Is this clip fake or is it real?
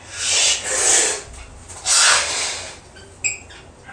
real